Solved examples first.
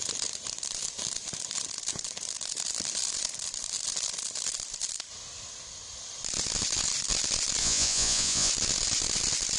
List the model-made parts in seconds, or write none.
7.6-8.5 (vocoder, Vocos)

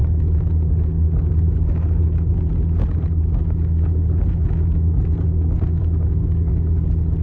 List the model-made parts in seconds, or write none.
none

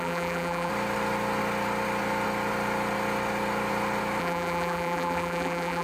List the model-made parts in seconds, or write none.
0.0-0.7 (vocoder, BigVGAN v2); 4.2-5.8